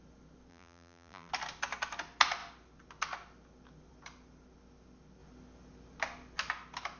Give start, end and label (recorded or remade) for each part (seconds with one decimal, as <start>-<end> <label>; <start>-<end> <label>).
0.0-0.5 recorded; 0.5-1.3 remade; 1.3-7.0 recorded